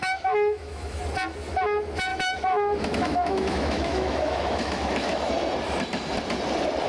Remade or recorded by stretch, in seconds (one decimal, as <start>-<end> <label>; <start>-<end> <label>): 0.0-1.0 remade; 1.0-2.1 recorded; 2.1-5.3 remade; 5.3-6.9 recorded